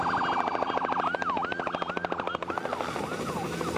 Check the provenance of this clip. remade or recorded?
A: remade